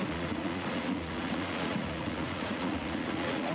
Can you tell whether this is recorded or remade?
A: remade